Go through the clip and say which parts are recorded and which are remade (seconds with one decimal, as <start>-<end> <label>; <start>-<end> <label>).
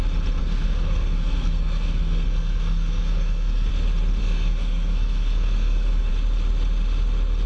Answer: 0.0-0.4 recorded; 0.4-3.7 remade; 3.7-4.2 recorded; 4.2-6.1 remade; 6.1-7.5 recorded